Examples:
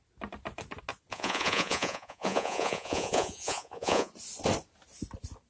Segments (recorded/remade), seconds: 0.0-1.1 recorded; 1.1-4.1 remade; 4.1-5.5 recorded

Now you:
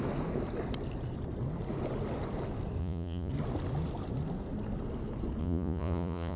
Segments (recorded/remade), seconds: 0.0-2.8 recorded; 2.8-3.3 remade; 3.3-5.4 recorded; 5.4-6.4 remade

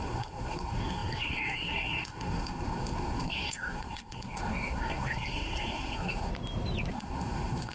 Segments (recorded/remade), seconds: 0.0-6.3 remade; 6.3-6.9 recorded; 6.9-7.7 remade

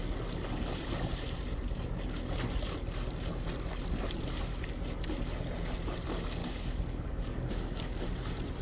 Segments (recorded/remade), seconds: 0.0-6.4 recorded; 6.4-8.0 remade; 8.0-8.6 recorded

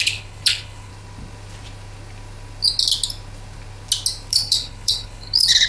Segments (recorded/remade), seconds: 0.0-0.9 remade; 0.9-4.3 recorded; 4.3-5.7 remade